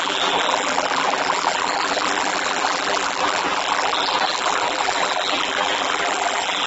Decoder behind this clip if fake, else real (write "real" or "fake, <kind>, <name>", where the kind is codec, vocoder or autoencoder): fake, vocoder, BigVGAN v2